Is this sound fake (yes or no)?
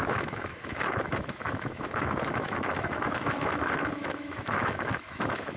yes